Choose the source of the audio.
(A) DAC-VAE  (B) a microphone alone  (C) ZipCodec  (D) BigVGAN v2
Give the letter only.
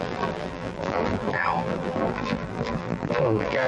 D